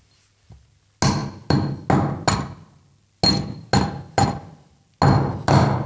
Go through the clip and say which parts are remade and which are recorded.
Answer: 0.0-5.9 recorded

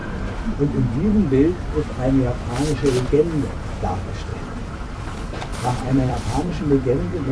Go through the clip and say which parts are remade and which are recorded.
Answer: 0.0-0.6 remade; 0.6-4.3 recorded; 4.3-5.0 remade; 5.0-5.5 recorded; 5.5-6.6 remade; 6.6-7.3 recorded

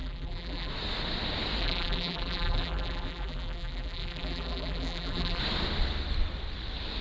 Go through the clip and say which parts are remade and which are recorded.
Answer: 0.0-0.7 remade; 0.7-1.6 recorded; 1.6-5.4 remade; 5.4-7.0 recorded